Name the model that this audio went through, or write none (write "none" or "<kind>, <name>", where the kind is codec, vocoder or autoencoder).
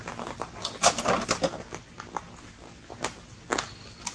none